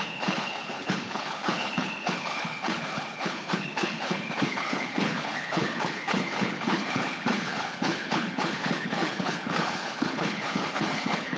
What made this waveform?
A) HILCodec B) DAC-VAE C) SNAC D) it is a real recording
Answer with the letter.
A